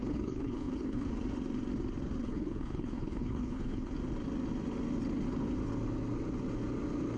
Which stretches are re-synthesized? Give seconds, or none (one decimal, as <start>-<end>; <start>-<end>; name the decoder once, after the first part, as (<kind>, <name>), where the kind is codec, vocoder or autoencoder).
0.0-1.1 (codec, HILCodec); 2.2-3.9